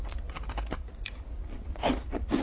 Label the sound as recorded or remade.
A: remade